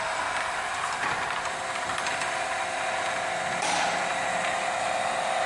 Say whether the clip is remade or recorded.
recorded